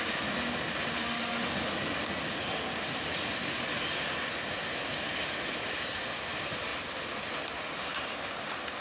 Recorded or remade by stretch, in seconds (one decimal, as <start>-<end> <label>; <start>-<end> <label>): 0.0-8.8 recorded